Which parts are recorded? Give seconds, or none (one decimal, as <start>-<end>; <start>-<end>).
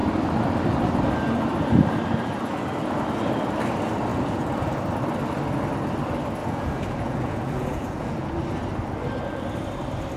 0.0-4.1; 4.8-6.4; 8.3-10.2